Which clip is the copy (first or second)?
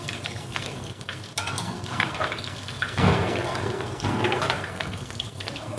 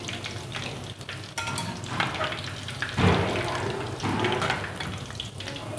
first